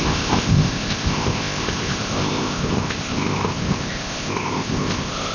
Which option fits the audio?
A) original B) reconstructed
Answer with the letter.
B